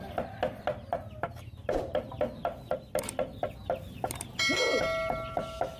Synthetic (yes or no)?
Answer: no